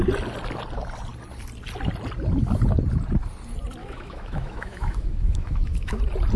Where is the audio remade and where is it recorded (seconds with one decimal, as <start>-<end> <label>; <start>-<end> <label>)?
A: 0.0-3.8 recorded; 3.8-6.0 remade; 6.0-6.4 recorded